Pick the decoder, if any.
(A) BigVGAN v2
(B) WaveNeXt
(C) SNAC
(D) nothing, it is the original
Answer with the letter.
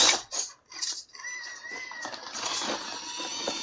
A